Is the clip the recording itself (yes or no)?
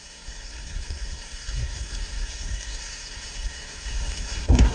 no